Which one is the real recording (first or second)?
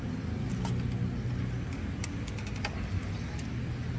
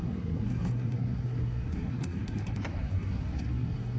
first